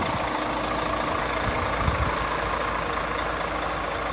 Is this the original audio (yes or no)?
yes